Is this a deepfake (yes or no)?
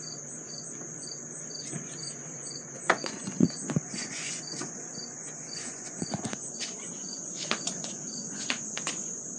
yes